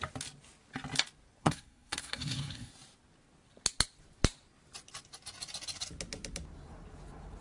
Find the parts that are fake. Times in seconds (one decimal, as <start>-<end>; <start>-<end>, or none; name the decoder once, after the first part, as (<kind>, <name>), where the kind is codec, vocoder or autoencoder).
1.4-2.7 (codec, SNAC)